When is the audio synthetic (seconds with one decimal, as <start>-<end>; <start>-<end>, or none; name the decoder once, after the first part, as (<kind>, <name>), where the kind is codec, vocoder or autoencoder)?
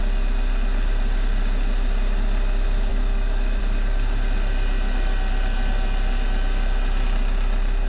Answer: 2.9-3.6 (autoencoder, DAC-VAE)